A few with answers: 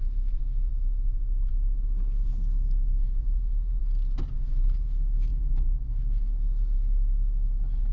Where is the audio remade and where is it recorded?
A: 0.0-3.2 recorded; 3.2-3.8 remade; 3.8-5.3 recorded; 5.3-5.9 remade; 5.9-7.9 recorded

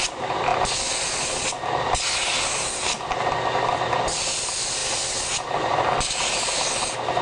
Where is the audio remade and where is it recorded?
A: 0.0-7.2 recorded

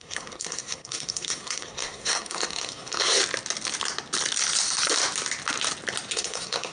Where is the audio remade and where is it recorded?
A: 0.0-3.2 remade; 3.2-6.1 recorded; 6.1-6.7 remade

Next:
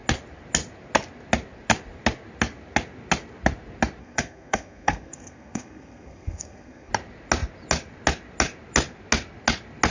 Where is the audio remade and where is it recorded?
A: 0.0-4.0 recorded; 4.0-6.9 remade; 6.9-9.9 recorded

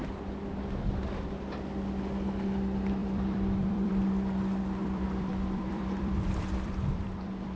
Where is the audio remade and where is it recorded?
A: 0.0-3.0 recorded; 3.0-3.9 remade; 3.9-4.8 recorded; 4.8-7.6 remade

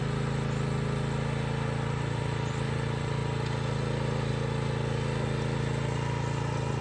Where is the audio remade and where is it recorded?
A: 0.0-6.8 recorded

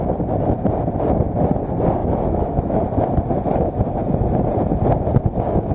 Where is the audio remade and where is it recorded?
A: 0.0-2.0 recorded; 2.0-2.9 remade; 2.9-5.7 recorded

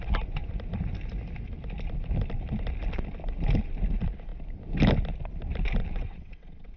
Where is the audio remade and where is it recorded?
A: 0.0-5.8 recorded; 5.8-6.8 remade